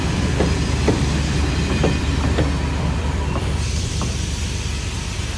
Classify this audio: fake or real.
fake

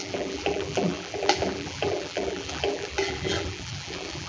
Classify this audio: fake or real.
fake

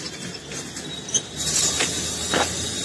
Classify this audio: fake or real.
real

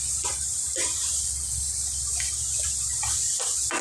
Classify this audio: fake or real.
real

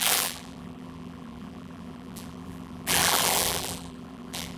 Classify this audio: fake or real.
fake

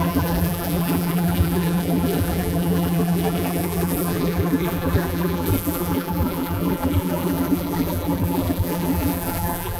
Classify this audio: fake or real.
fake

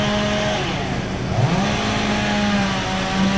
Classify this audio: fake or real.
real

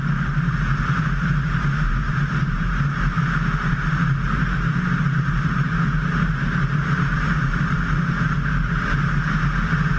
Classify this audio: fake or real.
fake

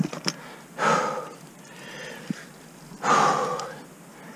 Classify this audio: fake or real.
real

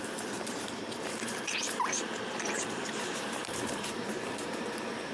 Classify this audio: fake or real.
fake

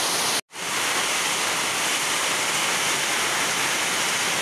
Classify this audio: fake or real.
real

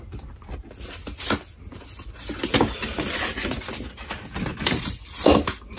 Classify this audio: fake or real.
real